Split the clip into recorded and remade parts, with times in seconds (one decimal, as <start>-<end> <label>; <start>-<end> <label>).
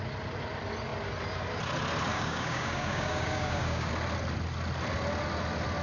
0.0-2.1 recorded; 2.1-3.9 remade; 3.9-5.8 recorded